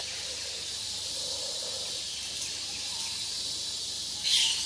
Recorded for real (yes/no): yes